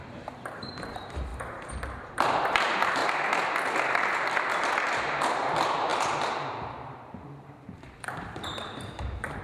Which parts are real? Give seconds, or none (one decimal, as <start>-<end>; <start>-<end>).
3.0-4.9